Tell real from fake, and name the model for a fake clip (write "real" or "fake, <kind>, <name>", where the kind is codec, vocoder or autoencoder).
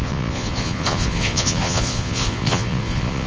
fake, vocoder, Vocos